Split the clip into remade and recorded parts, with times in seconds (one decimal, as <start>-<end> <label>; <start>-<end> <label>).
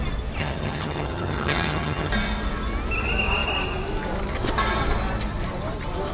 0.0-0.4 recorded; 0.4-2.1 remade; 2.1-6.1 recorded